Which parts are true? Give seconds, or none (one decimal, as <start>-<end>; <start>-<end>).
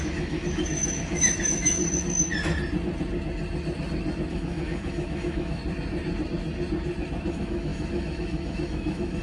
1.8-4.3; 5.6-7.3